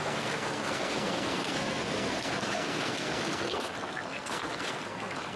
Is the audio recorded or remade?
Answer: remade